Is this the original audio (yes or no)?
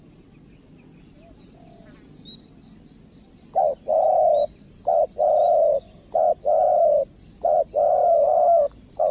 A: yes